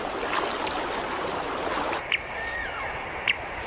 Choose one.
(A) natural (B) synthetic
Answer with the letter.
A